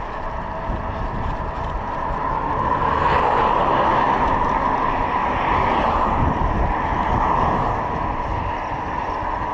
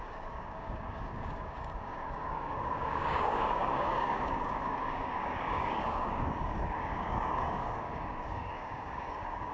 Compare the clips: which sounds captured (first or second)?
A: first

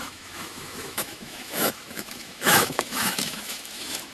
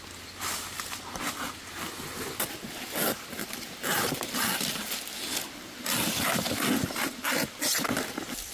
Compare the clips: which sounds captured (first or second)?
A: second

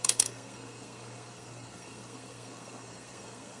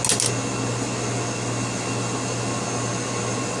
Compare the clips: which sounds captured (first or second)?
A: second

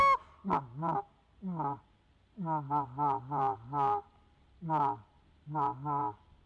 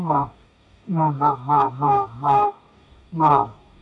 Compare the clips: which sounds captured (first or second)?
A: first